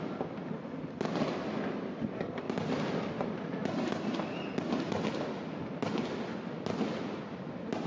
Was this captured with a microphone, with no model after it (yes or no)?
yes